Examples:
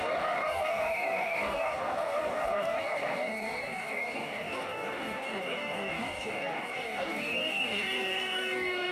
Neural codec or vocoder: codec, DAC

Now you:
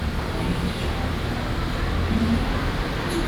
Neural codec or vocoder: none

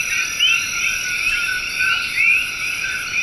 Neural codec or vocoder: none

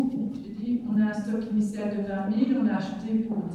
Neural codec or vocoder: vocoder, BigVGAN v2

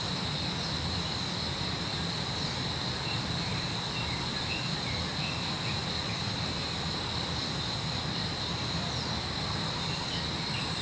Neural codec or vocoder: none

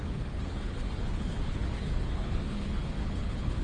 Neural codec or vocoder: codec, HILCodec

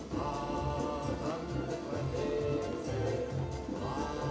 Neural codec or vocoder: none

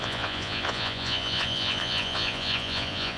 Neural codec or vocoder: vocoder, Vocos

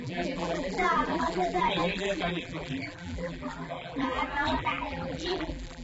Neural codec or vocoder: vocoder, BigVGAN v2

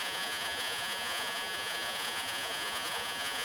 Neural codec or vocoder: vocoder, Vocos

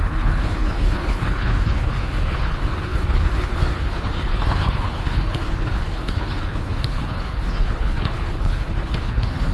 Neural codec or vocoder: codec, HILCodec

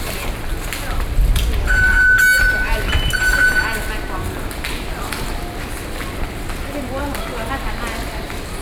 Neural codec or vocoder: none